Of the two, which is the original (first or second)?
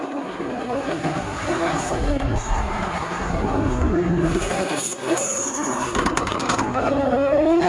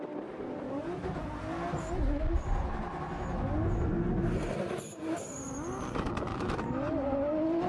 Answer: second